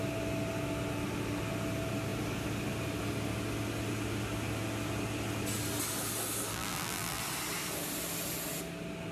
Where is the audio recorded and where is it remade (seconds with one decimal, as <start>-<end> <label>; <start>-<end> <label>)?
0.0-6.5 recorded; 6.5-7.2 remade; 7.2-9.1 recorded